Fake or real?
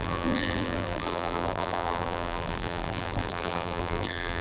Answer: fake